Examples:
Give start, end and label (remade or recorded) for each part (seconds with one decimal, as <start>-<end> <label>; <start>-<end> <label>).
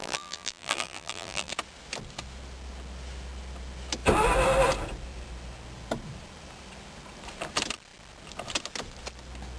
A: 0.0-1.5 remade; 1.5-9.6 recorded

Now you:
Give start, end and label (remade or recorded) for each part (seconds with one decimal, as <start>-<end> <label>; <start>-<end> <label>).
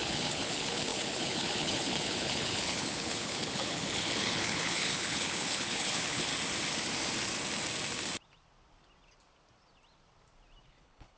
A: 0.0-6.3 remade; 6.3-10.7 recorded; 10.7-11.2 remade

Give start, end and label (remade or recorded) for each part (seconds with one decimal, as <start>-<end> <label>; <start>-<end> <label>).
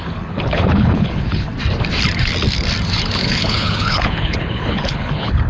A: 0.0-1.5 remade; 1.5-3.2 recorded; 3.2-5.5 remade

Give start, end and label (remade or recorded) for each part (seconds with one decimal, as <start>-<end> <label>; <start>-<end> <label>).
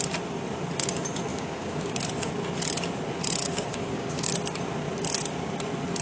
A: 0.0-1.3 recorded; 1.3-1.9 remade; 1.9-3.4 recorded; 3.4-4.3 remade; 4.3-6.0 recorded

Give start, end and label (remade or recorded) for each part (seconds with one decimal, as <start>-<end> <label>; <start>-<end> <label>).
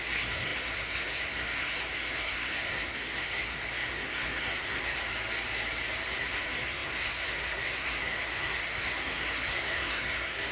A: 0.0-5.0 remade; 5.0-6.2 recorded; 6.2-10.5 remade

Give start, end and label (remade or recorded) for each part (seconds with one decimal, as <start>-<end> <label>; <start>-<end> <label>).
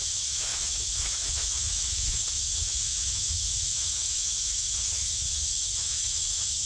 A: 0.0-6.7 remade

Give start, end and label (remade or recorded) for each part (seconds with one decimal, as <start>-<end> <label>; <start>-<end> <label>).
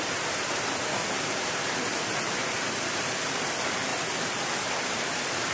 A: 0.0-5.5 remade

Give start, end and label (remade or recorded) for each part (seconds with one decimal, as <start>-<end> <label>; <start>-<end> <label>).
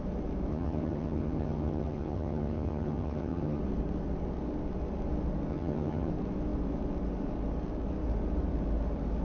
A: 0.0-0.5 recorded; 0.5-3.6 remade; 3.6-5.5 recorded; 5.5-6.1 remade; 6.1-9.2 recorded